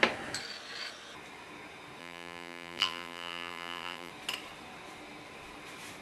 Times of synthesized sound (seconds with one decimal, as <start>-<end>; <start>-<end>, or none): 2.0-4.1